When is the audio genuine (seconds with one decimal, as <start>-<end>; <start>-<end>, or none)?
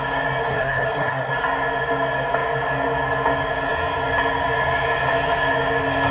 0.0-0.5; 1.3-6.1